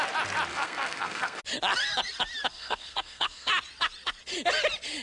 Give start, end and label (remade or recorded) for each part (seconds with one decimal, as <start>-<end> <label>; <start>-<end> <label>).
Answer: 0.0-0.5 recorded; 0.5-1.4 remade; 1.4-2.5 recorded; 2.5-3.5 remade; 3.5-5.0 recorded